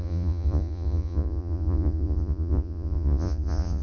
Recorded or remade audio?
remade